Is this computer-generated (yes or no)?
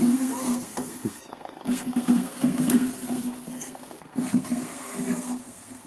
yes